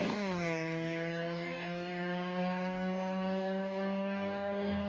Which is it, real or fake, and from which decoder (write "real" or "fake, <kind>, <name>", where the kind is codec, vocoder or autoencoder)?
fake, codec, DAC